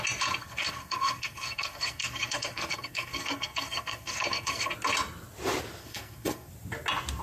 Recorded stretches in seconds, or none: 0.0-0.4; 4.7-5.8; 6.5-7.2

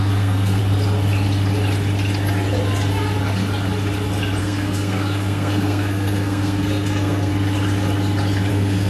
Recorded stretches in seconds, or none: 0.6-4.4; 7.3-8.5

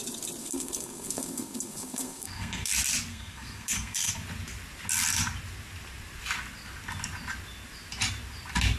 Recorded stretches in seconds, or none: 0.0-0.4; 2.7-3.1; 4.1-8.8

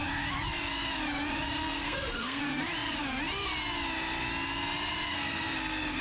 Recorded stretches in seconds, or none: 0.0-1.6; 2.4-5.1

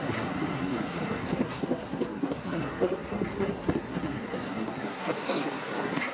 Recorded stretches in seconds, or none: none

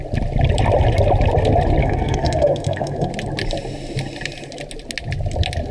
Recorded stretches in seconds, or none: 0.0-1.8; 3.1-5.7